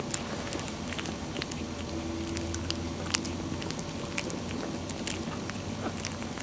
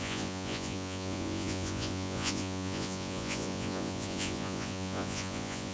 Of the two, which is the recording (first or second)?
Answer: first